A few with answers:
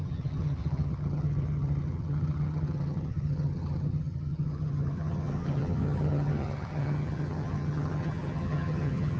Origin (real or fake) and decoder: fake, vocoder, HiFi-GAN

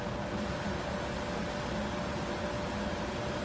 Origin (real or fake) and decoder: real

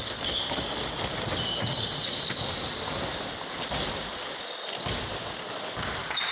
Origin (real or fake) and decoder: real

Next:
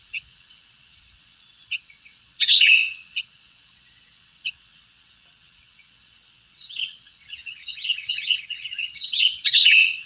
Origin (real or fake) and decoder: fake, vocoder, WaveNeXt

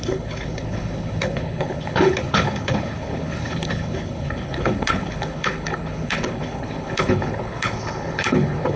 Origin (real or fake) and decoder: fake, codec, HILCodec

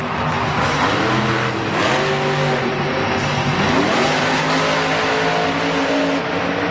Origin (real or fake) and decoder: real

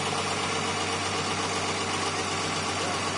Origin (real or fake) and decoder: real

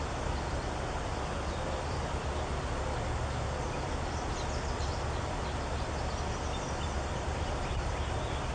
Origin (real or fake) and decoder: real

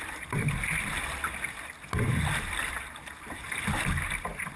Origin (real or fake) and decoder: real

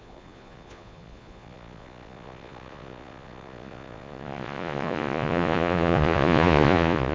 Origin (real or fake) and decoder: fake, vocoder, Vocos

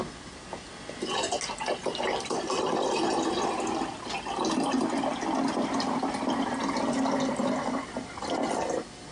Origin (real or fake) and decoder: real